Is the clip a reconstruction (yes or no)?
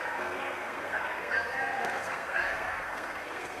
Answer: yes